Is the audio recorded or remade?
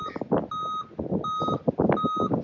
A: recorded